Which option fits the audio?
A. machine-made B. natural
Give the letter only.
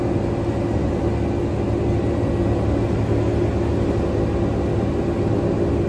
B